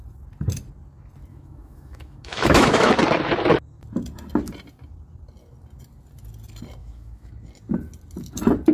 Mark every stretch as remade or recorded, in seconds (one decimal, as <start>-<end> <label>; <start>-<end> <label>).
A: 0.0-1.3 recorded; 1.3-2.9 remade; 2.9-6.8 recorded; 6.8-7.3 remade; 7.3-8.7 recorded